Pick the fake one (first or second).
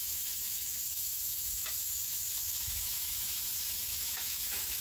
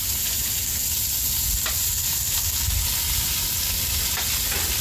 first